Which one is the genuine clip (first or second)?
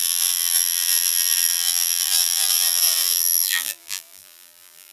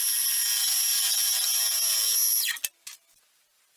second